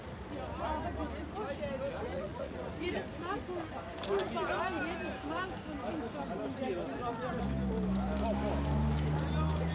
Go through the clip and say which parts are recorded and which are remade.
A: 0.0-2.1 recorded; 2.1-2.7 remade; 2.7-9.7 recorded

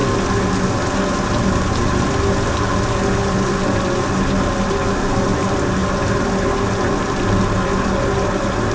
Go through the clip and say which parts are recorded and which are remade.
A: 0.0-8.7 recorded

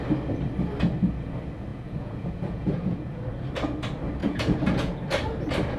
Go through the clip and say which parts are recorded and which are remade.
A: 0.0-1.7 recorded; 1.7-3.3 remade; 3.3-4.2 recorded; 4.2-5.0 remade; 5.0-5.8 recorded

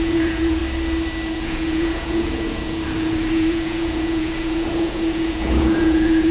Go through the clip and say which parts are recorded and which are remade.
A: 0.0-0.6 remade; 0.6-1.3 recorded; 1.3-6.3 remade